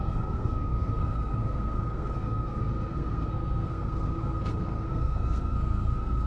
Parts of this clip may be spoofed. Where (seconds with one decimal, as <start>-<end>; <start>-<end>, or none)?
0.0-6.3